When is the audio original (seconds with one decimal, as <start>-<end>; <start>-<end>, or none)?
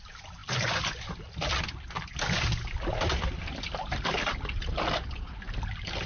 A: 0.0-0.4; 4.1-6.1